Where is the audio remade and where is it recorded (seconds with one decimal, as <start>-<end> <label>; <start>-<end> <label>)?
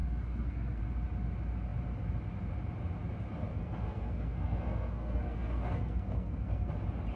0.0-0.8 remade; 0.8-3.5 recorded; 3.5-6.7 remade; 6.7-7.2 recorded